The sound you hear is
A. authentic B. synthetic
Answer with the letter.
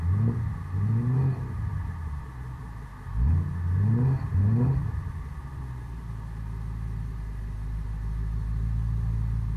A